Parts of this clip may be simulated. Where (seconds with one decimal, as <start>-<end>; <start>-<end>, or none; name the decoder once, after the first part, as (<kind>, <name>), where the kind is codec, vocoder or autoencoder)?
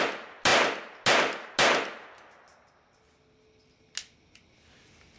none